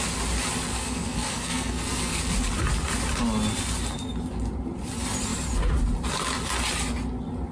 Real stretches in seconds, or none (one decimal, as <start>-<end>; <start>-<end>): 0.0-0.7; 2.2-7.5